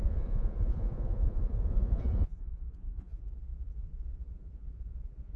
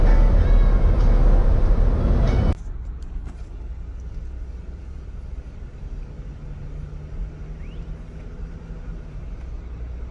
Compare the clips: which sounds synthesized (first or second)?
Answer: first